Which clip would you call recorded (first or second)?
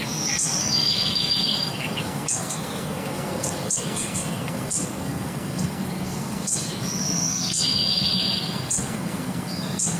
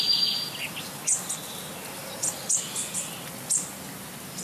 second